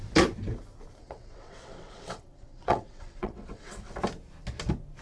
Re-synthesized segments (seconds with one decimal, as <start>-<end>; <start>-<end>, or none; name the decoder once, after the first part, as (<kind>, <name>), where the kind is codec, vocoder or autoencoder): 1.0-4.0 (vocoder, WaveNeXt)

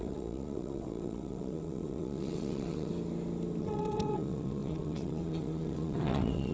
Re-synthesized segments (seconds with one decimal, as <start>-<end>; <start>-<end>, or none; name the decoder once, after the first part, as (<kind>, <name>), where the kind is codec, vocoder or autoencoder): 0.0-2.9 (vocoder, WaveNeXt); 3.6-6.5

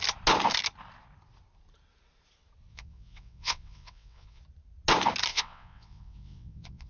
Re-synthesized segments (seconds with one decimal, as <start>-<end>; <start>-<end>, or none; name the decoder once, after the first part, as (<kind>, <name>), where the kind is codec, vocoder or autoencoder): 2.7-4.4 (vocoder, WaveNeXt); 5.3-6.9

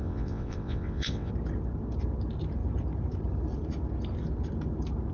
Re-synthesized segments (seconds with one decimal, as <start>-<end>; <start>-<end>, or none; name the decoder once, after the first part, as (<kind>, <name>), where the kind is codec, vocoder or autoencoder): 0.0-1.3 (vocoder, WaveNeXt)

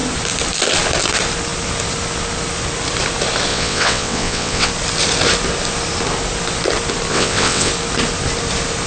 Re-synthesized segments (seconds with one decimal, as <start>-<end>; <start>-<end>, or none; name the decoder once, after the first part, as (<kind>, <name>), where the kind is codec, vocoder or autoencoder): 3.5-4.7 (vocoder, WaveNeXt); 7.1-7.7

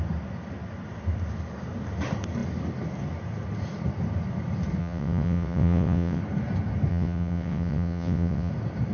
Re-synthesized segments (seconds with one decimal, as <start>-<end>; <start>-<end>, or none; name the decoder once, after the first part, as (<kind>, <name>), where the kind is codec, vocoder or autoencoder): 4.8-6.2 (vocoder, WaveNeXt); 6.9-8.5

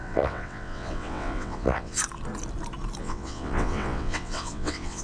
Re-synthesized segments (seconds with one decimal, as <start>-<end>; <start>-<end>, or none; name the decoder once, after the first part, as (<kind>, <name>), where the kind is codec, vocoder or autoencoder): 0.0-2.0 (vocoder, WaveNeXt); 3.0-5.0

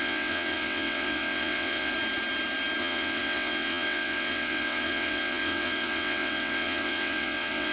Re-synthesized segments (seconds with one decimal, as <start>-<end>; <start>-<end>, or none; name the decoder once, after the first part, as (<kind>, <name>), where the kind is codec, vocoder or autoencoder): 0.0-1.9 (vocoder, WaveNeXt); 2.8-7.7